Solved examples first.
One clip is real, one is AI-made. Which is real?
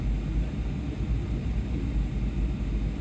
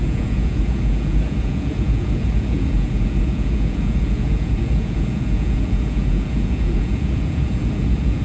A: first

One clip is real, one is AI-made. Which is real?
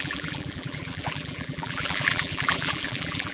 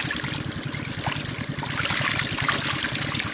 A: second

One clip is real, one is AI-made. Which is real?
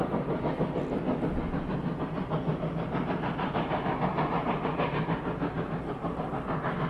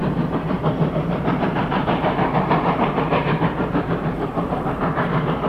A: first